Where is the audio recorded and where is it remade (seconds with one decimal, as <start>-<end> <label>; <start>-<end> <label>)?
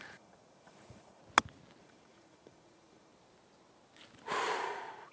0.0-1.2 remade; 1.2-1.8 recorded; 1.8-3.1 remade; 3.1-4.6 recorded; 4.6-5.1 remade